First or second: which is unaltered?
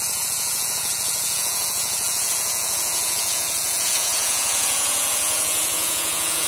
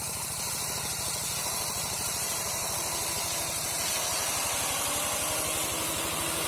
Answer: second